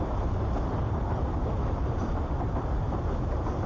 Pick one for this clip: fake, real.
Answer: real